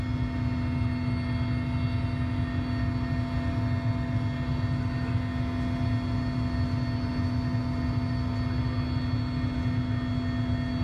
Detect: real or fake real